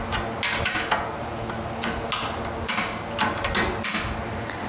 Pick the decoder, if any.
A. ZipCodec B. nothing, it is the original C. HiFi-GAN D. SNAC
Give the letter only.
B